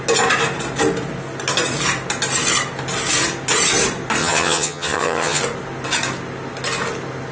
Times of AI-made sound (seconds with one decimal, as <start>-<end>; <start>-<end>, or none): 4.2-5.4